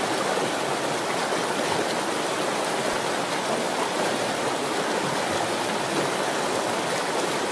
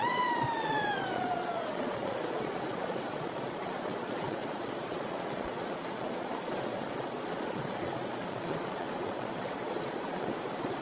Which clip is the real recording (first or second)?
first